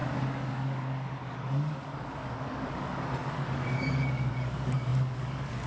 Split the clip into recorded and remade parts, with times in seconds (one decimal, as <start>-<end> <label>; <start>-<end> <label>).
0.0-5.7 remade